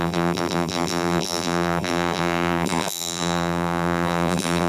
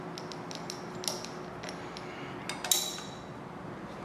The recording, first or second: second